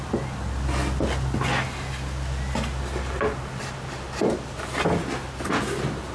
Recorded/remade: recorded